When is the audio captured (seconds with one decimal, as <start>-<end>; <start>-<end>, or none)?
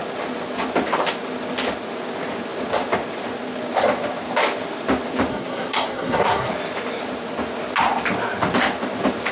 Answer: 0.0-5.3; 6.5-9.3